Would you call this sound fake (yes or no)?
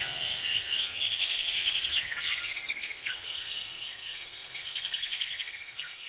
yes